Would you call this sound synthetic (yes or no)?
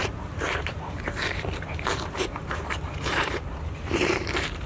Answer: yes